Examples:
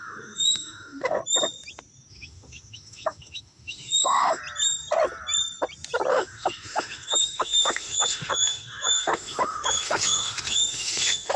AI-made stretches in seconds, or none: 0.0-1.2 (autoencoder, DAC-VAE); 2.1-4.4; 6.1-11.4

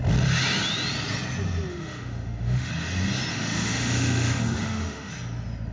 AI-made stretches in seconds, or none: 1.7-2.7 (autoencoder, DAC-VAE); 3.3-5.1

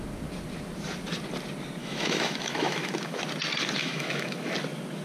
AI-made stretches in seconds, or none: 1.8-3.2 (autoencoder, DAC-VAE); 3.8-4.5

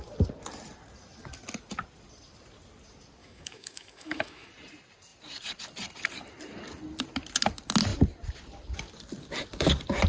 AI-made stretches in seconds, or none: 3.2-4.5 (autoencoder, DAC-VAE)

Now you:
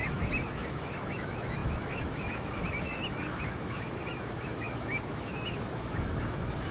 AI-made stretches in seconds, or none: 0.0-6.7 (autoencoder, DAC-VAE)

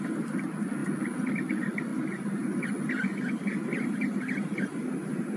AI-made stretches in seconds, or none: none